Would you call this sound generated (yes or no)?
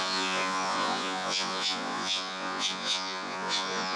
yes